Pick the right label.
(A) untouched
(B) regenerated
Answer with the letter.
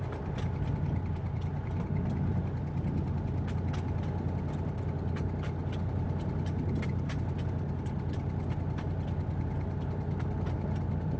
A